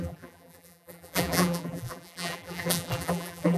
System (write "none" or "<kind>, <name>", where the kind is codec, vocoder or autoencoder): vocoder, BigVGAN v2